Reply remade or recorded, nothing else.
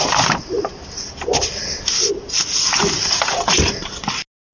recorded